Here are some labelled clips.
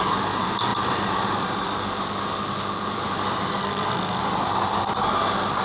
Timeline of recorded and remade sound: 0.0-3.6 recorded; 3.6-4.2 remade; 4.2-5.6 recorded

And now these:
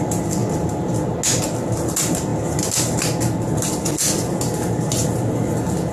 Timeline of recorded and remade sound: 0.0-5.9 recorded

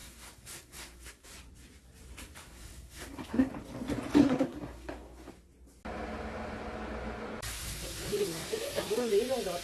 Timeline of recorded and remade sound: 0.0-1.1 remade; 1.1-2.4 recorded; 2.4-3.5 remade; 3.5-4.2 recorded; 4.2-5.3 remade; 5.3-7.5 recorded; 7.5-9.1 remade; 9.1-9.6 recorded

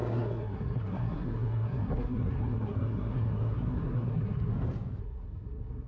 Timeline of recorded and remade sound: 0.0-4.5 remade; 4.5-5.0 recorded; 5.0-5.9 remade

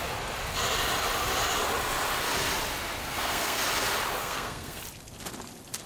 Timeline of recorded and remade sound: 0.0-3.0 recorded; 3.0-3.6 remade; 3.6-4.2 recorded; 4.2-4.8 remade; 4.8-5.9 recorded